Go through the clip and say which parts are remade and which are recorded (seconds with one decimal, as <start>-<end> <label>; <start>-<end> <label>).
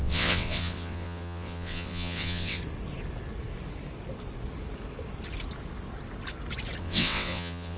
0.0-2.6 remade; 2.6-6.8 recorded; 6.8-7.8 remade